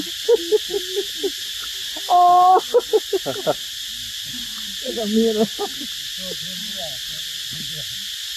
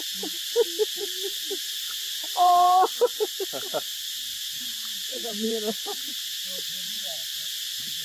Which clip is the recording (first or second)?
first